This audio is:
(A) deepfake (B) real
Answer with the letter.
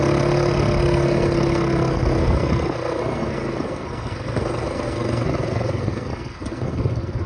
A